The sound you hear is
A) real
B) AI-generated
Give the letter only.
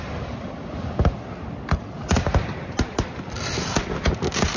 B